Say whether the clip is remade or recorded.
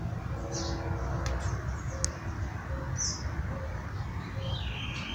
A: recorded